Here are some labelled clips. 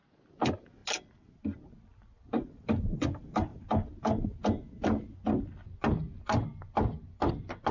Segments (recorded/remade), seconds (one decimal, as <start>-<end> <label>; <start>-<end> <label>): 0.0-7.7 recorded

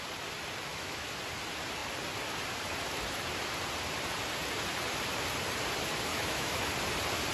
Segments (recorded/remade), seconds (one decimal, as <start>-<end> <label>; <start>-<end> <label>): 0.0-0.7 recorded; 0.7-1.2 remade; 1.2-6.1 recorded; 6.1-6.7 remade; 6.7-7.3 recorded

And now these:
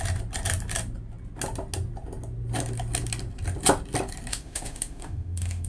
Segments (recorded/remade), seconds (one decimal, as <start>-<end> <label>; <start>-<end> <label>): 0.0-4.3 recorded; 4.3-5.7 remade

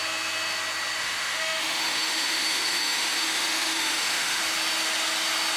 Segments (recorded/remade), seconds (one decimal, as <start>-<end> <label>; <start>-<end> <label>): 0.0-1.0 recorded; 1.0-4.4 remade; 4.4-5.6 recorded

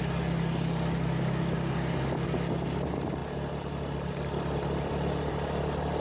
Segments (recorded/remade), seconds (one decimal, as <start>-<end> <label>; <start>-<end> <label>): 0.0-6.0 recorded